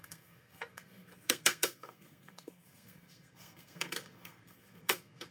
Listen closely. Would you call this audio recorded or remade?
remade